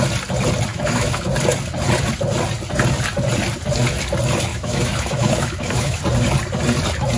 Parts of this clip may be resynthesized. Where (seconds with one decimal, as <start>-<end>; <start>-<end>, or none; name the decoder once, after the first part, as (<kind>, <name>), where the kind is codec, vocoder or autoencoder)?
0.7-1.2 (autoencoder, DAC-VAE); 4.5-6.0